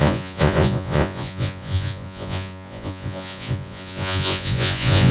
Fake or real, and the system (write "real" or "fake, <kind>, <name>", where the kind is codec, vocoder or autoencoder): fake, vocoder, Vocos